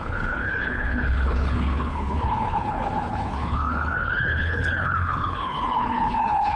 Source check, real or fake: fake